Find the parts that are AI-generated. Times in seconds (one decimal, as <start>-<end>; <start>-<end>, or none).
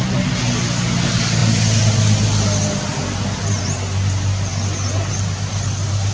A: none